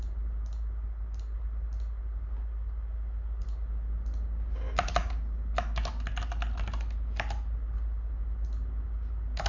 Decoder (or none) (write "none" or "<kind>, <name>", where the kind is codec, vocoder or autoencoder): none